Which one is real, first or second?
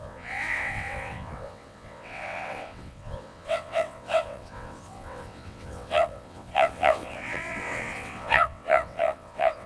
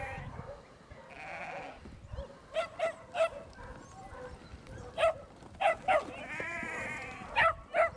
second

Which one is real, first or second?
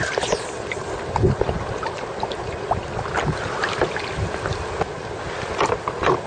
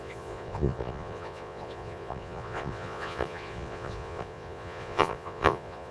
first